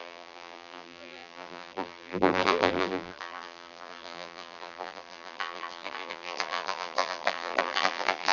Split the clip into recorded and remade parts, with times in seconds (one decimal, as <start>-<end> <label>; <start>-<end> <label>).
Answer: 0.0-8.3 remade